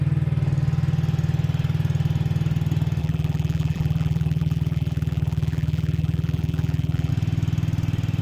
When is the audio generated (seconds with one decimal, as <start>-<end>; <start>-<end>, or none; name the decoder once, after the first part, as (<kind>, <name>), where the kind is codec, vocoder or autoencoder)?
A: 3.0-7.1 (vocoder, BigVGAN v2)